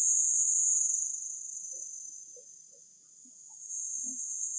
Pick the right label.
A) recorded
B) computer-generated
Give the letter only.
B